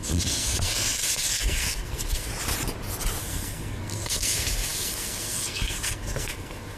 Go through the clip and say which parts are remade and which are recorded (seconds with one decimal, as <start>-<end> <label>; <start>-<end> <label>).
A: 0.0-2.3 remade; 2.3-3.2 recorded; 3.2-6.8 remade